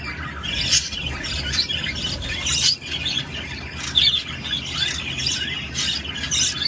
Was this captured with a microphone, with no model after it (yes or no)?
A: yes